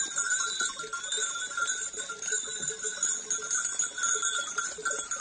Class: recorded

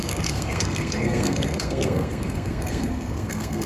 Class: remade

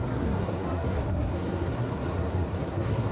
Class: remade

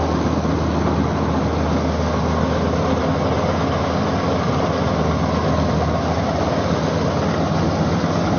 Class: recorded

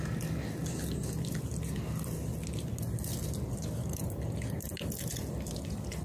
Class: recorded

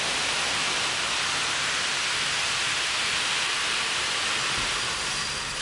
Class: recorded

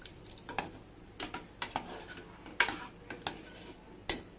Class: recorded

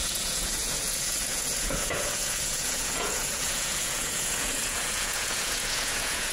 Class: remade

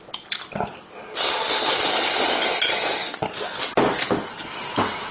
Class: recorded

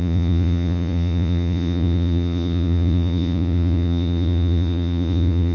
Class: remade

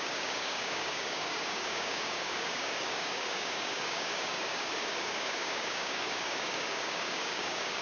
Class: remade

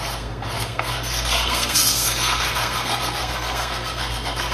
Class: remade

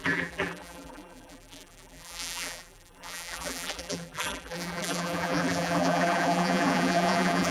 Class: remade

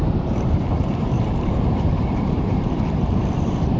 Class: remade